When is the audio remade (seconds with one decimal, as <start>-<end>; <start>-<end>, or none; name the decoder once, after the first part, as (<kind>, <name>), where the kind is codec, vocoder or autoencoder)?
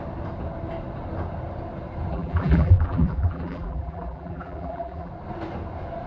2.1-5.1 (vocoder, BigVGAN v2)